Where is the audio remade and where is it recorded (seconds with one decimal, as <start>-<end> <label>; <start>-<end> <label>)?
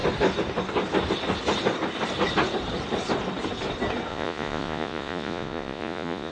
0.0-4.1 recorded; 4.1-6.3 remade